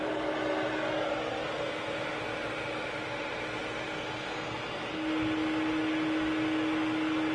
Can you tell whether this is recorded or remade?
recorded